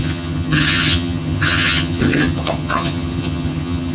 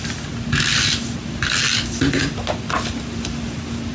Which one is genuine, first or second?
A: second